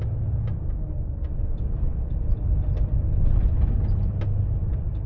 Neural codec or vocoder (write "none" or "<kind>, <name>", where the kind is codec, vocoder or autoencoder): none